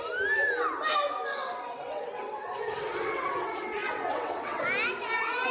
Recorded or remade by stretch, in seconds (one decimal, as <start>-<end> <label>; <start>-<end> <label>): 0.0-1.3 recorded; 1.3-4.6 remade; 4.6-5.5 recorded